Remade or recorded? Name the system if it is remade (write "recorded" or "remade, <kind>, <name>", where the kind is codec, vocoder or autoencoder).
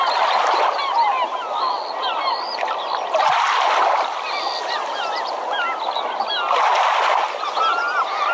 recorded